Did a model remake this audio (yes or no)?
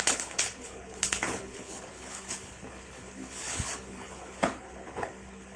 yes